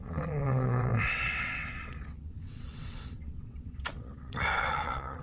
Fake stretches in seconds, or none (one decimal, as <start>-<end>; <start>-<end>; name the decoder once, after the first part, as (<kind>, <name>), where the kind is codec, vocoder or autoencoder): 0.0-5.2 (vocoder, WaveNeXt)